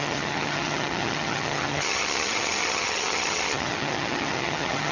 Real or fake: fake